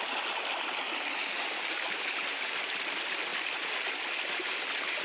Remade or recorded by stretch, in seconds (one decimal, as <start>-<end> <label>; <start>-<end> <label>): 0.0-5.0 recorded